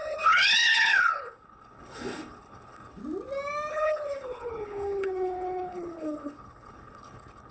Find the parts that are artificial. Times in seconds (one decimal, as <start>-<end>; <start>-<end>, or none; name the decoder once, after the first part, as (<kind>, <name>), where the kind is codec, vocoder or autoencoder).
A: 0.0-3.0 (codec, HILCodec); 3.7-7.5

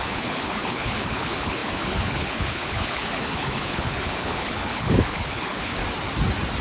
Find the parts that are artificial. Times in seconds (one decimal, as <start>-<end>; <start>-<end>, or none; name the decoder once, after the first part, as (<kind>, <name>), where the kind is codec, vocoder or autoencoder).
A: 0.0-5.8 (codec, HILCodec)

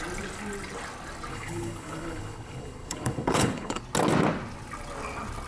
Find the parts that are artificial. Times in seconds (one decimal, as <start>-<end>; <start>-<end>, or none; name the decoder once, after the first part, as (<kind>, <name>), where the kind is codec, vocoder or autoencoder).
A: 1.3-3.8 (codec, HILCodec)

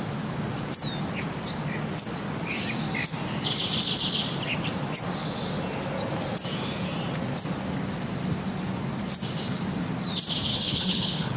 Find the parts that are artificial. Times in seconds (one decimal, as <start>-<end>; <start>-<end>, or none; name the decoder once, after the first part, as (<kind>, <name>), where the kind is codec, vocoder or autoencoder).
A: 10.5-11.4 (codec, HILCodec)

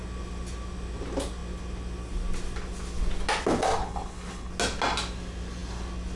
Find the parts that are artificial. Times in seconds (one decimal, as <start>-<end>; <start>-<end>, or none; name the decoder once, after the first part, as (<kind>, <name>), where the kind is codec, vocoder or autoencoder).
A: 3.8-4.5 (codec, HILCodec)

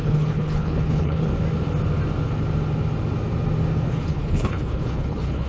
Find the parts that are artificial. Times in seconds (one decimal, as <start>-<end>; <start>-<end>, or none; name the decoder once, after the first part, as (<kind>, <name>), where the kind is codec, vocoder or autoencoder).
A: 0.0-1.3 (codec, HILCodec); 3.9-5.5

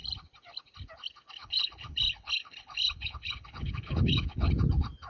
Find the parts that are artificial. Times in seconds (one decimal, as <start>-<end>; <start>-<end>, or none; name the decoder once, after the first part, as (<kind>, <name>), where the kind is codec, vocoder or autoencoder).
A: 1.4-4.5 (codec, HILCodec)

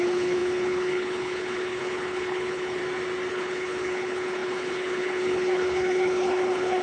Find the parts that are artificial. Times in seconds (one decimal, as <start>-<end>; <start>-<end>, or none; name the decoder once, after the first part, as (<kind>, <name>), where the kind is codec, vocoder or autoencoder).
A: 0.0-2.8 (codec, HILCodec); 3.3-6.8